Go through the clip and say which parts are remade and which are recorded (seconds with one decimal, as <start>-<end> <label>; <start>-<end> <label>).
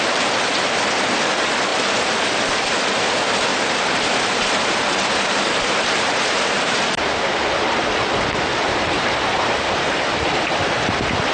0.0-3.5 recorded; 3.5-6.8 remade; 6.8-8.5 recorded; 8.5-10.0 remade; 10.0-11.3 recorded